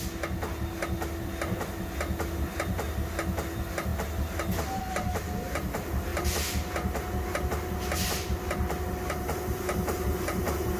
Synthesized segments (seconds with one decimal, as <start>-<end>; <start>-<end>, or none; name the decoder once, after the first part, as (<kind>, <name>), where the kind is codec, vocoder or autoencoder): none